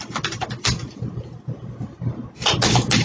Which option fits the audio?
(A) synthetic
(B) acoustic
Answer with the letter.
B